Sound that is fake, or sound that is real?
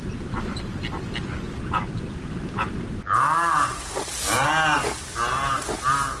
real